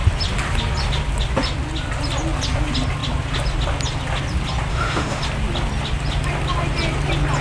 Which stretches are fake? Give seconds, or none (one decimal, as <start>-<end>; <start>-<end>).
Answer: 4.7-5.2